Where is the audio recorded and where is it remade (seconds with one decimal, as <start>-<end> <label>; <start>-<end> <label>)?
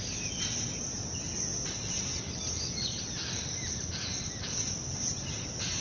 0.0-5.8 recorded